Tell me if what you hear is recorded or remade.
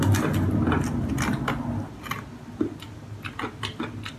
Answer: recorded